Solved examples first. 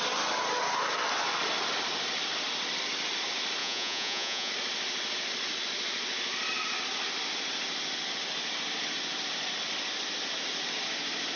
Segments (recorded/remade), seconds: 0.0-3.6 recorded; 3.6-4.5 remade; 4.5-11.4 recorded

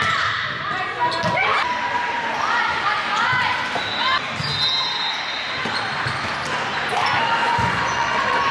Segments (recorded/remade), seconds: 0.0-7.4 recorded; 7.4-8.5 remade

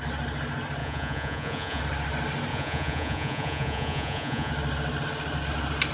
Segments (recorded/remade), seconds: 0.0-0.8 recorded; 0.8-1.8 remade; 1.8-2.5 recorded; 2.5-4.5 remade; 4.5-5.9 recorded

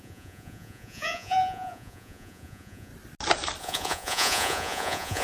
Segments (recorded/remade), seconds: 0.0-2.9 remade; 2.9-3.6 recorded; 3.6-5.2 remade

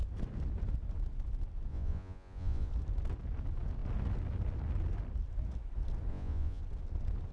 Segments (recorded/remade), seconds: 0.0-1.7 recorded; 1.7-2.7 remade; 2.7-6.1 recorded; 6.1-6.6 remade; 6.6-7.3 recorded